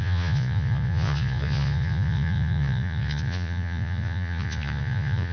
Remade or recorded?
remade